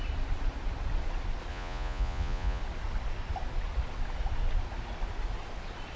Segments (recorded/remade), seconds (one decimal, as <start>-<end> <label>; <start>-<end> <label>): 0.0-1.5 recorded; 1.5-2.6 remade; 2.6-6.0 recorded